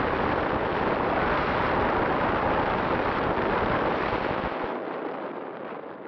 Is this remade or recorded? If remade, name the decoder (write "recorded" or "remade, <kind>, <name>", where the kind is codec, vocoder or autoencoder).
remade, vocoder, BigVGAN v2